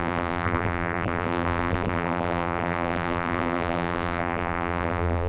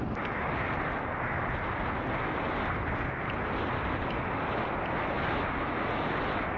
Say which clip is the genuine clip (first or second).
second